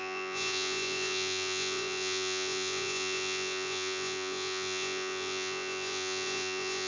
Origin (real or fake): fake